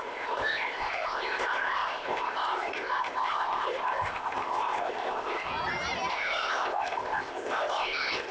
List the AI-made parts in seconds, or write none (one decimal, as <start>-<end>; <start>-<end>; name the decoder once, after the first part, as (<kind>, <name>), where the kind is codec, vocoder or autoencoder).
0.0-5.5 (codec, ZipCodec); 6.1-8.3